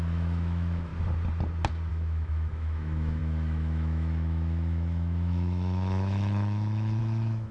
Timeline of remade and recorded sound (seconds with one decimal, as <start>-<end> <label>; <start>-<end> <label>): 0.0-0.9 remade; 0.9-1.9 recorded; 1.9-7.5 remade